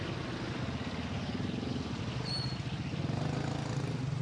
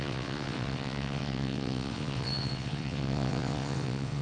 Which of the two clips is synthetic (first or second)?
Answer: second